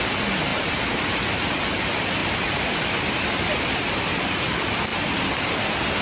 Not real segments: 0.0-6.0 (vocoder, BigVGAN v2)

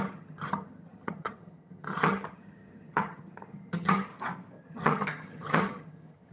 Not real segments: 0.0-4.1 (vocoder, HiFi-GAN); 4.6-6.3

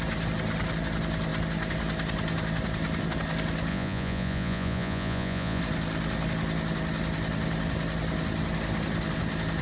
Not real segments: 3.7-5.6 (vocoder, Vocos)

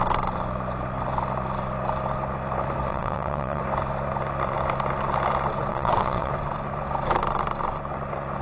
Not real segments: 2.9-3.6 (vocoder, WaveNeXt); 5.7-6.3

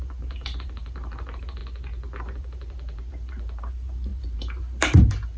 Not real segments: 0.0-1.6 (vocoder, BigVGAN v2); 2.2-5.4